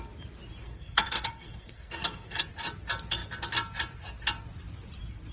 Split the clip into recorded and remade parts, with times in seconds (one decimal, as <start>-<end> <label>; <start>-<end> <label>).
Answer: 0.0-0.6 recorded; 0.6-2.4 remade; 2.4-5.3 recorded

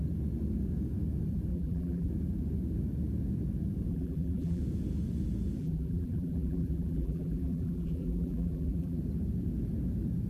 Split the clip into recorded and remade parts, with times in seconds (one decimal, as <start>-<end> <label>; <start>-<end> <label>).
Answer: 0.0-1.5 recorded; 1.5-2.1 remade; 2.1-3.9 recorded; 3.9-4.6 remade; 4.6-5.6 recorded; 5.6-9.0 remade; 9.0-10.3 recorded